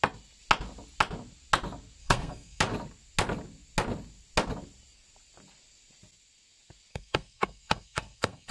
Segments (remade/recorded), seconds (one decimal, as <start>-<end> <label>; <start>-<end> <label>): 0.0-2.0 recorded; 2.0-2.6 remade; 2.6-6.9 recorded; 6.9-8.5 remade